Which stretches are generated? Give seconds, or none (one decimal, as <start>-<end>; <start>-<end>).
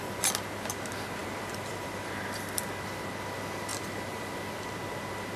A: 1.2-2.0; 3.7-4.3